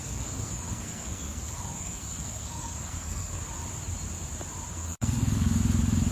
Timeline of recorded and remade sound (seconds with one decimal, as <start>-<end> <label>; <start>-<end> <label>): 0.0-3.4 remade; 3.4-4.7 recorded; 4.7-5.6 remade; 5.6-6.1 recorded